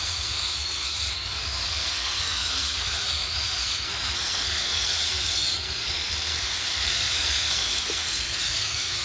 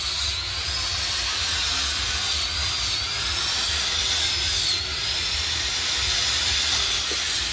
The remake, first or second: first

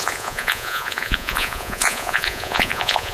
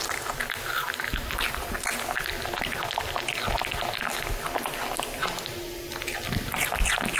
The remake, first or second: first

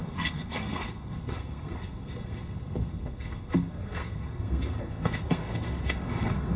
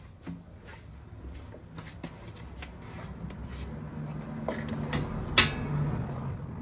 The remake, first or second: first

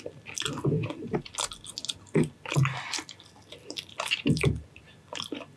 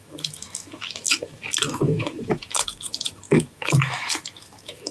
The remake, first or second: second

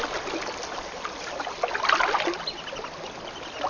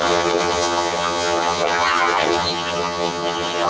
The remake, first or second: second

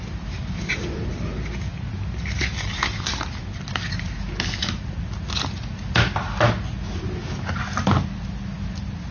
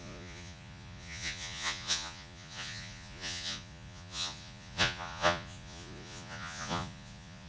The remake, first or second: second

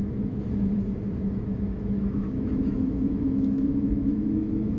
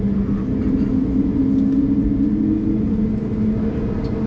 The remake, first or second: first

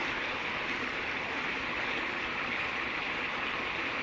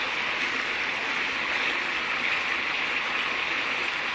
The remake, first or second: first